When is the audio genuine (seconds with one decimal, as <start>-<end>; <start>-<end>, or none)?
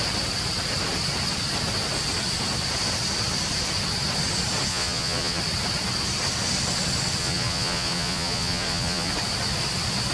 0.0-4.7; 5.4-7.2; 9.1-10.1